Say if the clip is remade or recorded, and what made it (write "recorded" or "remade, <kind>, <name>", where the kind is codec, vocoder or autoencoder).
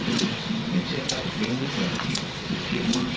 remade, vocoder, WaveNeXt